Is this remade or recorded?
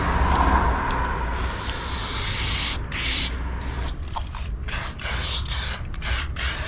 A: recorded